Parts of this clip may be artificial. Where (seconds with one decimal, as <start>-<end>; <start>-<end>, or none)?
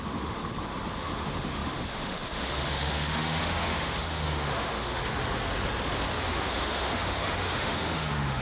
0.0-0.4; 1.0-5.0; 6.2-8.4